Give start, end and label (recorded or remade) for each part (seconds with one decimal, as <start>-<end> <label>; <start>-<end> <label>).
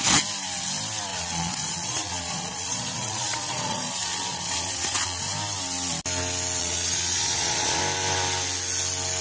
0.0-1.1 recorded; 1.1-5.2 remade; 5.2-6.6 recorded; 6.6-7.8 remade; 7.8-9.2 recorded